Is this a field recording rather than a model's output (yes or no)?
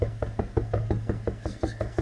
no